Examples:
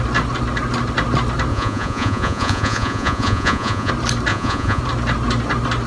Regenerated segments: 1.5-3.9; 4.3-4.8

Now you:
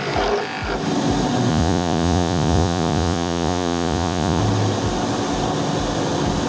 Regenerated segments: 1.5-4.4

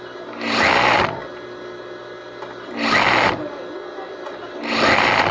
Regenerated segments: none